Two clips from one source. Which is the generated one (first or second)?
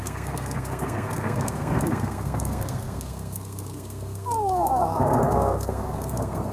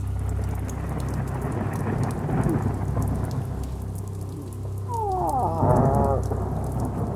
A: first